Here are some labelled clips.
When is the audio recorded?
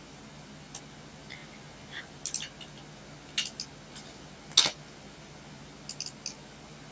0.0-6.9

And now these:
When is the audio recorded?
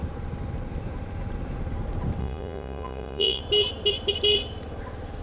0.0-2.2; 3.4-5.2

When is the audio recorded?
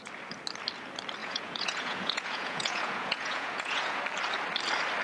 0.0-1.2; 4.0-5.0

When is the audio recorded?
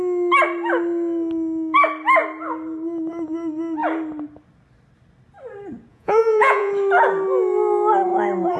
0.0-5.9; 6.7-8.6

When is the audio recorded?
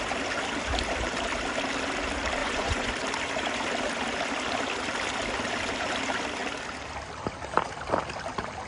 0.0-2.4; 2.9-8.7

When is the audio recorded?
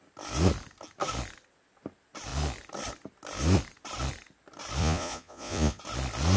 0.0-4.8; 5.8-6.4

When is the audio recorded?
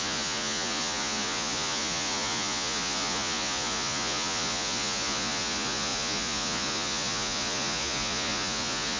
none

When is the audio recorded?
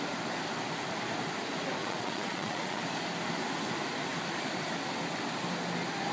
0.0-1.8; 2.8-6.1